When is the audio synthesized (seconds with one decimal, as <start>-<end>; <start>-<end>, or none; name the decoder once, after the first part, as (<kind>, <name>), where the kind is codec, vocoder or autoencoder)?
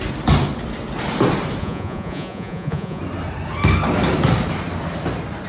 1.6-3.0 (vocoder, Vocos)